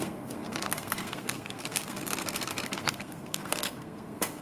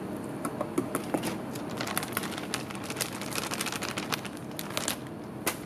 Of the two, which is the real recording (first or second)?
second